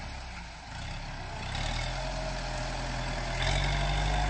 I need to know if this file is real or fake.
real